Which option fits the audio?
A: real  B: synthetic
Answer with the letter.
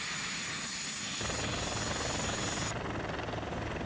A